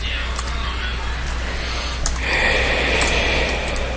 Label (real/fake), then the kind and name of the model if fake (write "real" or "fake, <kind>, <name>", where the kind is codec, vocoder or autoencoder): real